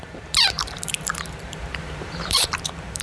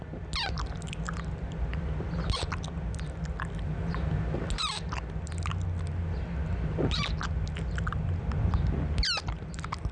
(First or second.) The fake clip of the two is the first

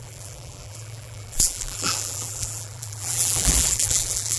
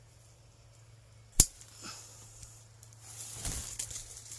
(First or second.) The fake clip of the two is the first